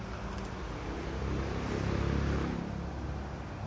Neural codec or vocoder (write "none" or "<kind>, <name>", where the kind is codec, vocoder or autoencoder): none